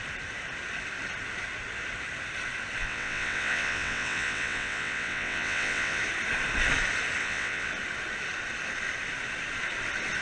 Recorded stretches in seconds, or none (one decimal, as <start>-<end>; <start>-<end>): 0.0-2.8; 6.0-7.2; 7.7-10.2